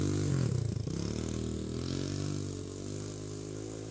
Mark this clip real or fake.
real